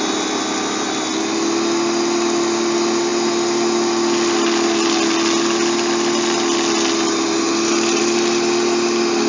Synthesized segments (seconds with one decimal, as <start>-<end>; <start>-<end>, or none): none